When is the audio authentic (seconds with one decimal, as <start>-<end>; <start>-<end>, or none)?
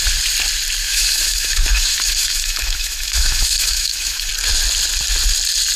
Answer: 0.0-0.8; 4.3-5.8